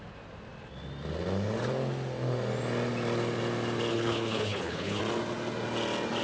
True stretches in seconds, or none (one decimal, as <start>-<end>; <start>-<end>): 0.0-3.9; 5.0-6.2